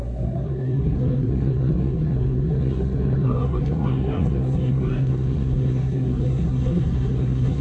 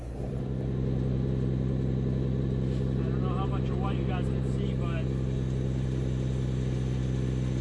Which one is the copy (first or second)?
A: first